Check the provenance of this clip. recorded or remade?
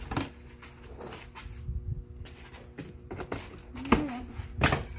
recorded